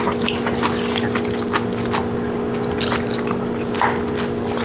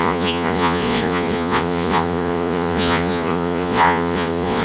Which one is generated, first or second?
second